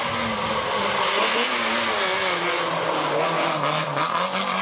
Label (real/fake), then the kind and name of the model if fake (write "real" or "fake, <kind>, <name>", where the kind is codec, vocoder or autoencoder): real